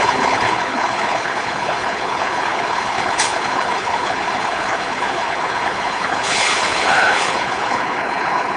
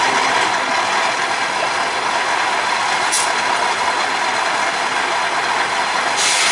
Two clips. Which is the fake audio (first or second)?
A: first